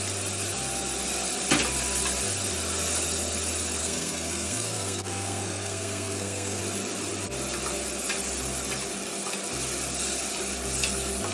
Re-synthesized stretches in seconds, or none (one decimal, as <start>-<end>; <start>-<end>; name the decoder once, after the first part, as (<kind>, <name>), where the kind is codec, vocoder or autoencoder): 3.8-6.6 (codec, SNAC)